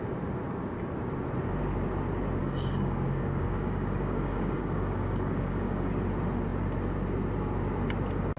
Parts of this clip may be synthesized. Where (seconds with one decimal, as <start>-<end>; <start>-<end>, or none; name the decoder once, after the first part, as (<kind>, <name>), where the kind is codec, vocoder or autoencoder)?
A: 2.4-5.9 (codec, DAC)

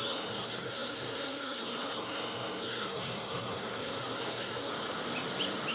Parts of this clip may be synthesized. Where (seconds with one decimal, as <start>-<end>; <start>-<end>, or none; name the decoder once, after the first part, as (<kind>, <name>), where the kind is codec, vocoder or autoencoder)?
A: 0.0-4.7 (codec, SNAC)

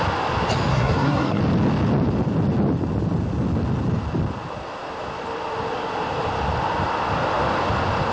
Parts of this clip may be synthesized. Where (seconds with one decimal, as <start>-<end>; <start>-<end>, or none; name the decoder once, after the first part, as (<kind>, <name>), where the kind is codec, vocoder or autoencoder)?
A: 0.7-1.4 (codec, SNAC)

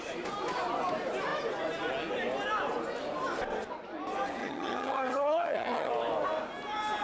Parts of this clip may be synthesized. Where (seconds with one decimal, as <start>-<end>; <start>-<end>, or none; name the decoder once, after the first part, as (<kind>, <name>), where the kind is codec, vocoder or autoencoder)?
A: 4.4-5.9 (vocoder, HiFi-GAN)

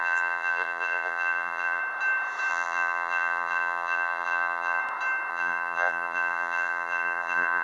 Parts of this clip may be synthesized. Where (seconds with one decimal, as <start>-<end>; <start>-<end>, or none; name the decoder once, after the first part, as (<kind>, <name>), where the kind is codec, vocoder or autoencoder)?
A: 0.0-1.8 (vocoder, BigVGAN v2); 2.5-4.8; 5.3-7.6

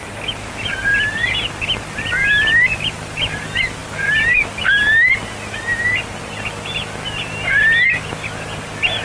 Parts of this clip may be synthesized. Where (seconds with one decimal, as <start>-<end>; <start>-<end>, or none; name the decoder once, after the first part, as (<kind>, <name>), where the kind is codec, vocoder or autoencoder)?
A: none